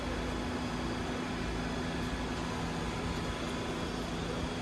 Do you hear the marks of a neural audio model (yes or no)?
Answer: no